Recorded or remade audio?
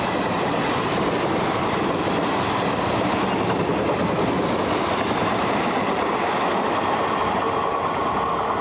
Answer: recorded